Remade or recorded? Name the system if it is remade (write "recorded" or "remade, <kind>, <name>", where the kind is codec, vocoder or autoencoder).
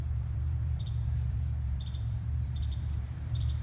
remade, vocoder, BigVGAN v2